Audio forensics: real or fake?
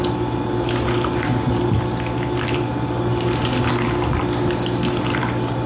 real